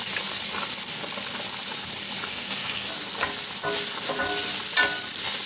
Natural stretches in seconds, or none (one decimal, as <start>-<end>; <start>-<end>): 0.0-2.3; 2.9-5.5